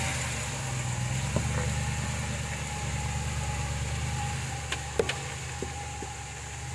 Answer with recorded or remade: recorded